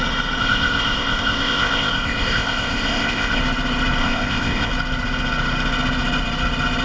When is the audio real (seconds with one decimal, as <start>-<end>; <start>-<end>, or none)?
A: 0.0-0.4; 3.4-4.0; 4.7-6.8